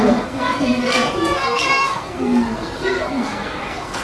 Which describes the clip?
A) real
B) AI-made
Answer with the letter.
B